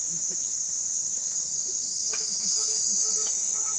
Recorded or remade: remade